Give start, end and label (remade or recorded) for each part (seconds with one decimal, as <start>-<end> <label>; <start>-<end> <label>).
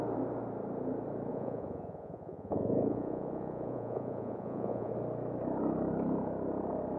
0.0-1.3 recorded; 1.3-4.9 remade; 4.9-7.0 recorded